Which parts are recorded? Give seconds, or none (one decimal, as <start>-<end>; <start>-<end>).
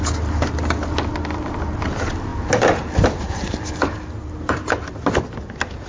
0.0-5.9